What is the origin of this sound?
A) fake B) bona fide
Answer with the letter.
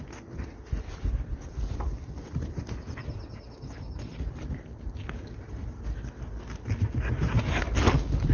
B